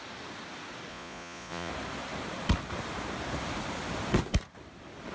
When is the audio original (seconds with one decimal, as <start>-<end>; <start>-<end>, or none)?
0.0-0.9; 1.7-5.1